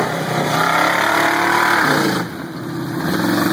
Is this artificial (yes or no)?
yes